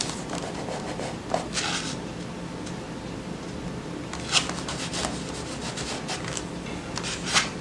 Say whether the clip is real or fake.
real